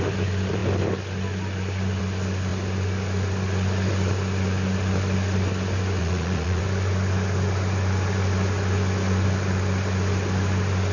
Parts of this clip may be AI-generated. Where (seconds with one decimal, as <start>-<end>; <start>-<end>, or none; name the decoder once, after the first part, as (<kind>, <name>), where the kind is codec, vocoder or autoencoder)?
6.0-6.6 (vocoder, Vocos)